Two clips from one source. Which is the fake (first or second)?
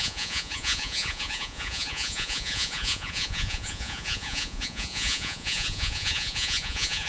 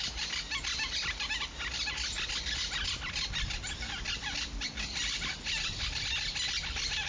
first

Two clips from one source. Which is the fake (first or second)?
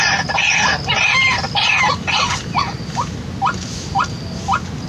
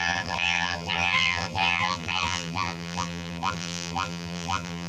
second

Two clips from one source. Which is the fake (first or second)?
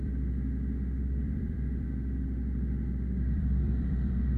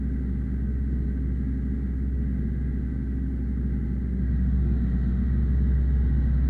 first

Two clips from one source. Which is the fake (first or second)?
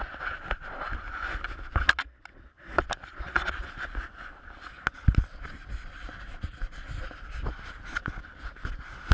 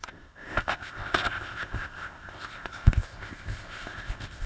second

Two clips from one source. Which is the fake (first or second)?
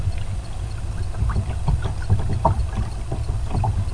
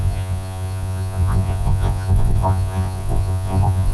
second